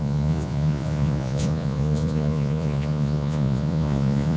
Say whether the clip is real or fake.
fake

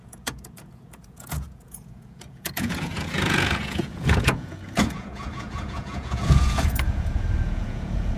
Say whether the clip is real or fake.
fake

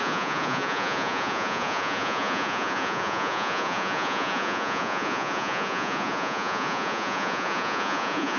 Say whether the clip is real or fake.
fake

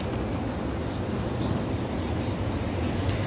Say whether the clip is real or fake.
real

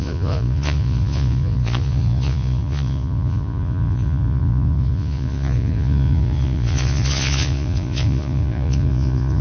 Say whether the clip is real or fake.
fake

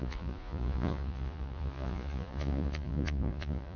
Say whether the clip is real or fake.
fake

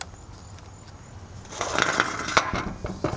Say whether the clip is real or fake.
real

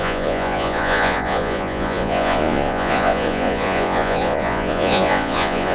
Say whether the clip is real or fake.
fake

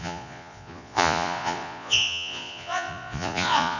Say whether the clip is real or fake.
fake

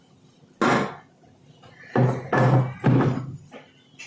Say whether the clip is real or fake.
real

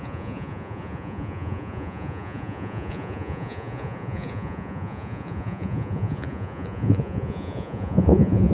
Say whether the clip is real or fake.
fake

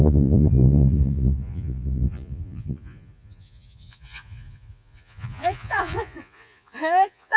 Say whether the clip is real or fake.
fake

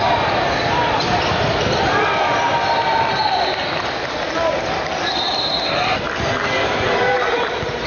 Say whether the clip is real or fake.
real